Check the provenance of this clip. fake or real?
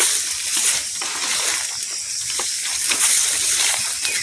real